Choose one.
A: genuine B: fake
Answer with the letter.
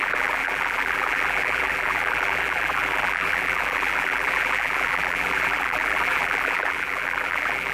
B